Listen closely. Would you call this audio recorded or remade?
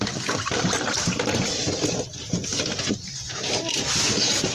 remade